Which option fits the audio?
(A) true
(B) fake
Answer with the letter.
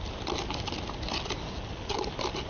A